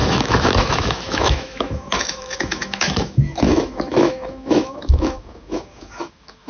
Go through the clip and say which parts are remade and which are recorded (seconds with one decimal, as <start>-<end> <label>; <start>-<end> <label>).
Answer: 0.0-6.5 remade